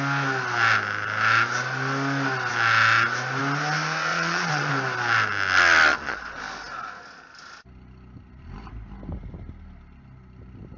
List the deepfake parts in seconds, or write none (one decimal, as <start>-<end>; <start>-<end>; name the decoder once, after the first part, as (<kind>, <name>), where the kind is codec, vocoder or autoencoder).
4.1-4.7 (vocoder, Vocos); 5.9-6.4